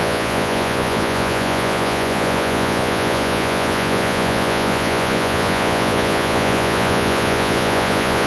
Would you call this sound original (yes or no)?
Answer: no